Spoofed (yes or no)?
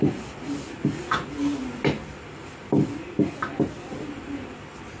no